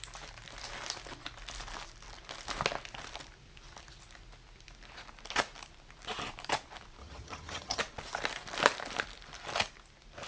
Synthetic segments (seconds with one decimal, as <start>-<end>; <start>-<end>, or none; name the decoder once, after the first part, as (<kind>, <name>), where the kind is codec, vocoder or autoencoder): 7.0-7.8 (vocoder, HiFi-GAN)